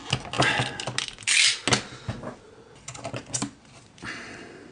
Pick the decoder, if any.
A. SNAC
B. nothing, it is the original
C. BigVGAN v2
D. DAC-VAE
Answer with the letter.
B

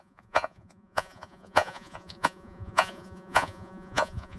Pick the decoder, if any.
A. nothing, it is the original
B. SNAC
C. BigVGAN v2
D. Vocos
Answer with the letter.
D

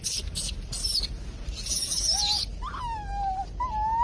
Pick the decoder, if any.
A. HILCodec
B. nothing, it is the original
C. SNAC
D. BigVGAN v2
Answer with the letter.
B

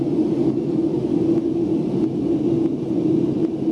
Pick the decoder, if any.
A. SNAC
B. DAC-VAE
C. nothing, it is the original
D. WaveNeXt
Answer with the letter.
C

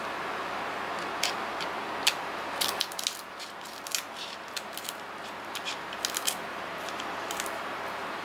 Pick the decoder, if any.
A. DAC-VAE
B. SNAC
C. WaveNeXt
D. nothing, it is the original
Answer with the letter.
D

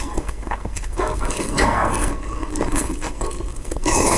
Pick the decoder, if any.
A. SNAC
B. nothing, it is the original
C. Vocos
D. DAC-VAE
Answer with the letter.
A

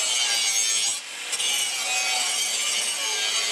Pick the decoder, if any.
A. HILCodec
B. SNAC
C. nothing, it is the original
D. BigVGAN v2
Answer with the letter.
C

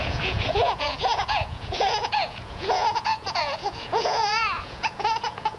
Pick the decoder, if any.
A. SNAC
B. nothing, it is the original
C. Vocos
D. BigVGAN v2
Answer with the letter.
C